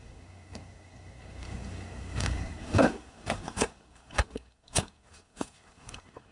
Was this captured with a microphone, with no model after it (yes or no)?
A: no